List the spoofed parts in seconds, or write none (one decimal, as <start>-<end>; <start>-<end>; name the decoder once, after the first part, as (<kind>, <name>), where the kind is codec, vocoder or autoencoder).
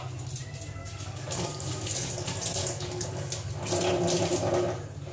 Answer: 0.8-2.1 (codec, DAC); 2.6-3.5